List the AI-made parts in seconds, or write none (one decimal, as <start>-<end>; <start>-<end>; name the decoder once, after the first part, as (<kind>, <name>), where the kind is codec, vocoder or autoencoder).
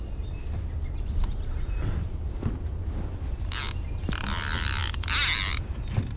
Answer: none